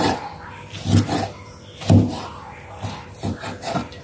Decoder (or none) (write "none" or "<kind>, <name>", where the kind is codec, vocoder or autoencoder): none